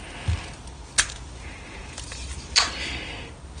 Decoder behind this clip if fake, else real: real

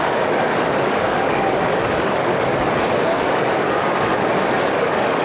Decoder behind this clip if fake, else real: fake, codec, DAC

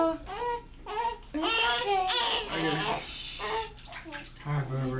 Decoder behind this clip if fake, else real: real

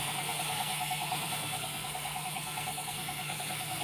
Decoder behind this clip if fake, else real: fake, codec, SNAC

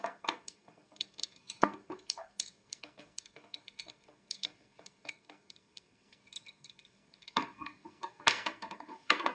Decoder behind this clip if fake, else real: fake, codec, SNAC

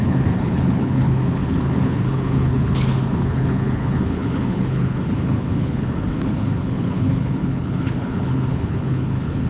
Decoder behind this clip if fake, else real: fake, codec, HILCodec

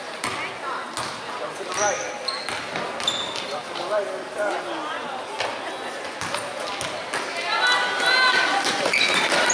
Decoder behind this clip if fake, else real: real